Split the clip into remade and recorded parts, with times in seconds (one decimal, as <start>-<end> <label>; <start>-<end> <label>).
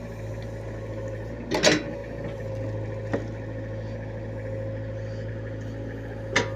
0.0-6.6 recorded